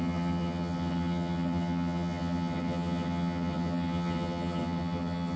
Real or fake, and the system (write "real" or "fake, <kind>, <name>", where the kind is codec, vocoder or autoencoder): fake, vocoder, HiFi-GAN